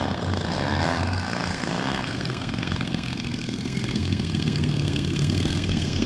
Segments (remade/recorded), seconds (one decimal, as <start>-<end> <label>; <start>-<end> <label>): 0.0-6.1 remade